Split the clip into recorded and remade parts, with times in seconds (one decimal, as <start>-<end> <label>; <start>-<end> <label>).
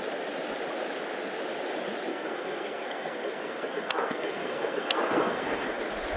0.0-2.1 recorded; 2.1-5.8 remade; 5.8-6.2 recorded